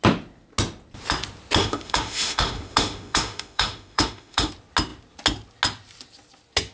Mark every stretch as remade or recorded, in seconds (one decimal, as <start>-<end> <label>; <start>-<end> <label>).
0.0-1.6 recorded; 1.6-4.5 remade; 4.5-6.7 recorded